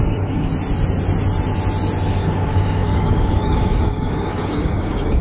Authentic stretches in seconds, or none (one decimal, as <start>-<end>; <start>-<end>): 0.5-2.1

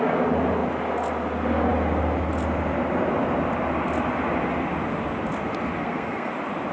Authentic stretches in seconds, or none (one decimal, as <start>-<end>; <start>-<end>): 0.0-5.8; 6.3-6.7

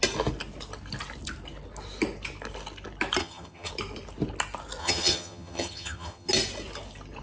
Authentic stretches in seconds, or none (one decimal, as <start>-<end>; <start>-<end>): 0.0-3.2; 3.7-4.8; 6.3-7.2

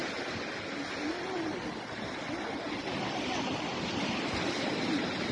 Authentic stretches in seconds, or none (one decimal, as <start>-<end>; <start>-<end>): 0.0-1.1

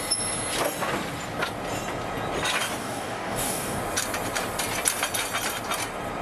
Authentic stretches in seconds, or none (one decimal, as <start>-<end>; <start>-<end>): 0.0-2.8; 3.8-6.2

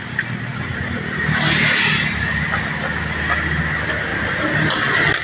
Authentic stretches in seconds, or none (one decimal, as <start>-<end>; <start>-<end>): 0.0-0.7; 1.9-4.1; 4.7-5.2

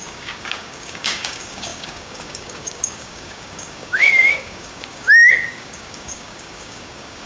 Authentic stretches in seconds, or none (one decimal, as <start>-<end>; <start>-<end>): none

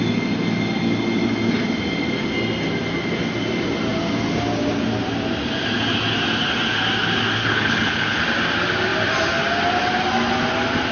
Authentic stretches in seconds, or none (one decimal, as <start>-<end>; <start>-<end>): 0.0-7.4; 8.2-10.9